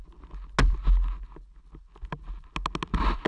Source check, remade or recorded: recorded